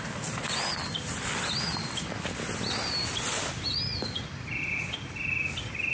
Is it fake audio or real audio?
real